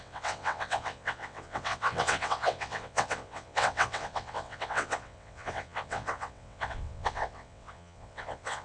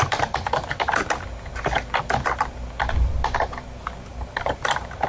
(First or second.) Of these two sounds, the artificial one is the first